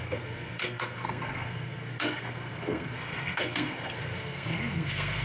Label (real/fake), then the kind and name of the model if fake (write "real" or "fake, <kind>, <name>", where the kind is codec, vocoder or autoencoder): fake, codec, SNAC